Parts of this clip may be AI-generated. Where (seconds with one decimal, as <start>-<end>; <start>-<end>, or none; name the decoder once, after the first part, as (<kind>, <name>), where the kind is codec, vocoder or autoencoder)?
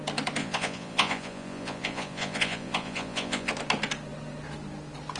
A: 0.4-3.5 (vocoder, Vocos)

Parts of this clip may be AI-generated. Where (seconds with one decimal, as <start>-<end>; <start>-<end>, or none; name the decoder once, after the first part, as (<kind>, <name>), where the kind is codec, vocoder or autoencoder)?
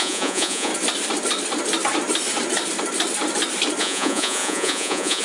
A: 0.0-0.7 (vocoder, Vocos); 3.8-5.2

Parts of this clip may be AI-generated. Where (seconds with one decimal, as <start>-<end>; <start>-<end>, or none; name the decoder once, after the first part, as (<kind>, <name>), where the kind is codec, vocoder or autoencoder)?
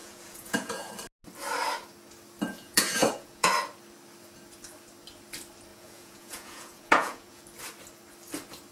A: 0.0-0.9 (vocoder, Vocos); 2.5-3.5; 5.7-7.4